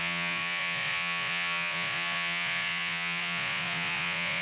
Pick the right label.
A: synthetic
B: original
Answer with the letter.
A